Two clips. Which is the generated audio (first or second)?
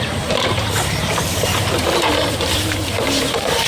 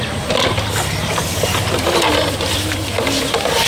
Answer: first